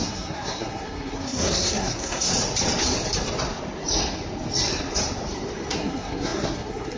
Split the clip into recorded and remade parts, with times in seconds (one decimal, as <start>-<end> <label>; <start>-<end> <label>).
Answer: 0.0-2.3 remade; 2.3-5.7 recorded; 5.7-7.0 remade